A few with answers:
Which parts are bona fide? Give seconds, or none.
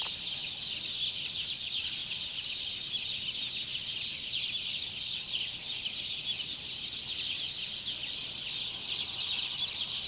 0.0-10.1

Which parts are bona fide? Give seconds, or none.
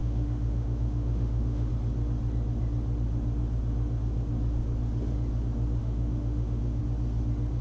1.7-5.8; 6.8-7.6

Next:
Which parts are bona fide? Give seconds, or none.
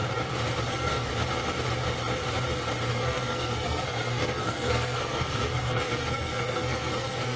0.0-0.7; 1.1-2.9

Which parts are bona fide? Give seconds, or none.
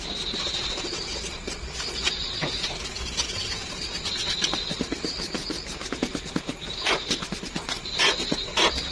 0.0-2.4; 3.7-6.0; 6.9-8.9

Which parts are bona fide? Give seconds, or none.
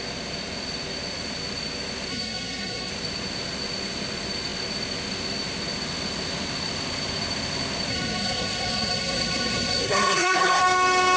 0.0-2.1; 2.9-7.9; 10.6-11.2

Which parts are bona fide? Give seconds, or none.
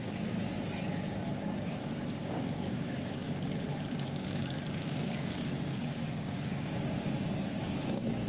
0.5-2.2; 3.2-3.9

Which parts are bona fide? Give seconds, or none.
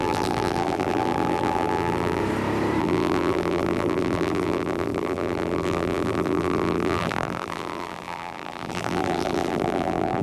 2.2-2.8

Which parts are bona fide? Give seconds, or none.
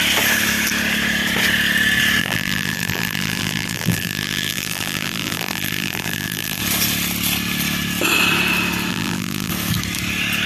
0.0-2.2; 6.6-8.9; 9.5-10.5